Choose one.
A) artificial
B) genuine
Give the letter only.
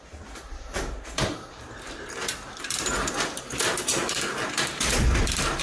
A